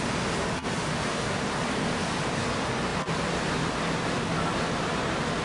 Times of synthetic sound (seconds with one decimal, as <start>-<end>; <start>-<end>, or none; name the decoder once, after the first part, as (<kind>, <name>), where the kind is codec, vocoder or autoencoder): none